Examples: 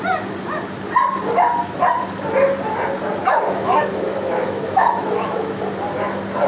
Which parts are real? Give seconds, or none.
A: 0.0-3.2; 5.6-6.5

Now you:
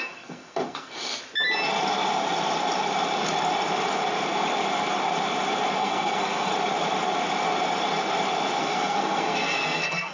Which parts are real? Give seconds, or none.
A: 1.1-5.8; 6.5-8.6

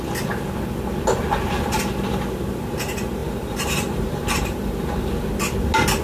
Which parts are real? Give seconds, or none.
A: 0.0-3.2; 5.3-6.0

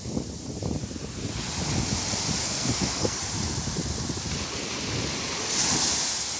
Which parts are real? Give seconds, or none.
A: 0.0-2.4; 3.2-6.4

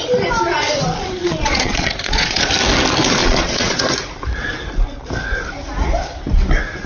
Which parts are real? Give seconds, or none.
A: 0.0-1.2; 2.5-3.2; 3.8-6.9

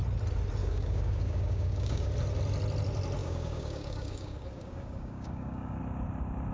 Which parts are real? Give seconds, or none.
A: 0.0-0.6; 2.1-3.2; 5.8-6.5

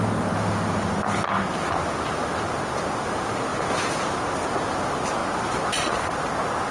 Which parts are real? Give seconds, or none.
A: 0.0-6.7

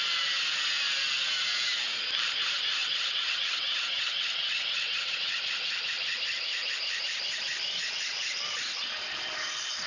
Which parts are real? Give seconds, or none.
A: 0.0-2.8; 5.4-9.9